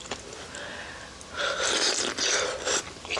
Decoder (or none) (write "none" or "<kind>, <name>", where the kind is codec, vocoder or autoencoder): none